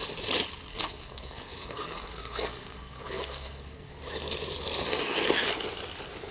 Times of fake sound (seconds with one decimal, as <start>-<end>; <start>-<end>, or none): 0.7-3.9; 4.9-5.5